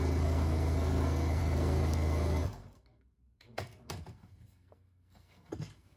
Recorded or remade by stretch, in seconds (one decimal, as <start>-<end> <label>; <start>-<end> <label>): 0.0-6.0 remade